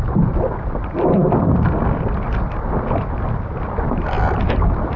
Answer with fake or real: real